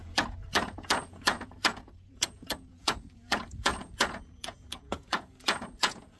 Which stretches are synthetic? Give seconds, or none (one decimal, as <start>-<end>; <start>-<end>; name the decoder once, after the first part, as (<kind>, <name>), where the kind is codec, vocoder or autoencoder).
0.0-6.2 (vocoder, Vocos)